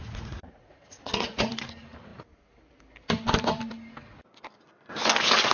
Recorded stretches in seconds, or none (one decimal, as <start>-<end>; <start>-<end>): 1.5-5.5